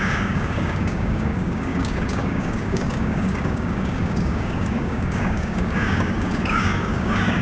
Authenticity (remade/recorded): remade